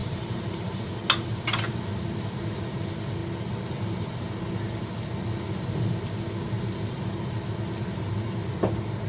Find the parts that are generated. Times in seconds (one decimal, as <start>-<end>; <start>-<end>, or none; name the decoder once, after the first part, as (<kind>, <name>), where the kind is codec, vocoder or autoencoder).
0.0-0.8 (vocoder, BigVGAN v2)